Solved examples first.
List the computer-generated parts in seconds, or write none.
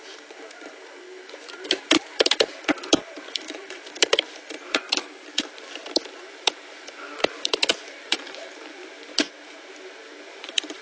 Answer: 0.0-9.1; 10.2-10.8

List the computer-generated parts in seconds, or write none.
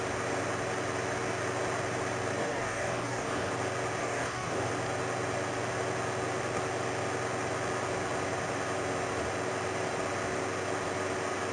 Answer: 2.4-3.5; 4.0-4.7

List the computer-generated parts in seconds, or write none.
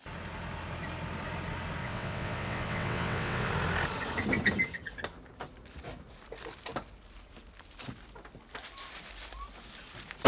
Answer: 1.8-3.5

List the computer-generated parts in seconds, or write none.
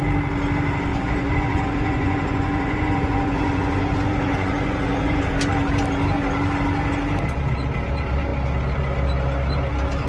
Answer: 0.9-5.2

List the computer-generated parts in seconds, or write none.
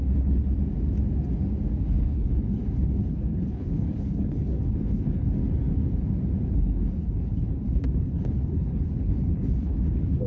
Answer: 0.0-0.6; 1.8-5.4; 6.5-10.3